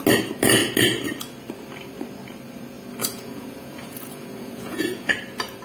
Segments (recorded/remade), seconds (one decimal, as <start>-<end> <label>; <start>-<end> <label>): 0.0-3.0 recorded; 3.0-5.1 remade; 5.1-5.6 recorded